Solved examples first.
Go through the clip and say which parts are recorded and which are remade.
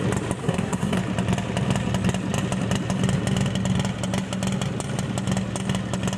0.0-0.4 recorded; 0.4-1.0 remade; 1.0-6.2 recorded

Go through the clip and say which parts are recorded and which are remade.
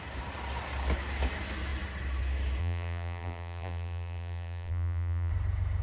0.0-2.6 recorded; 2.6-5.3 remade; 5.3-5.8 recorded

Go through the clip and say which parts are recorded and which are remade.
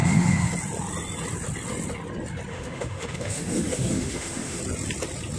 0.0-0.5 remade; 0.5-2.5 recorded; 2.5-4.6 remade; 4.6-5.4 recorded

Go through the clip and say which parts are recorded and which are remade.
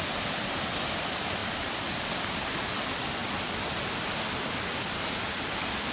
0.0-5.9 recorded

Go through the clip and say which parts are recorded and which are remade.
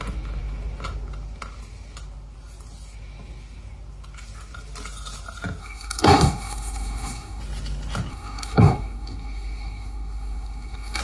0.0-5.6 recorded; 5.6-7.4 remade; 7.4-8.1 recorded; 8.1-11.0 remade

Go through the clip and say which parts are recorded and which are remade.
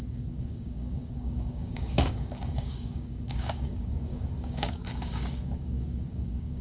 0.0-6.6 remade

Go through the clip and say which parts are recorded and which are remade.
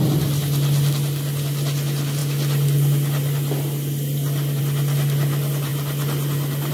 0.0-6.7 recorded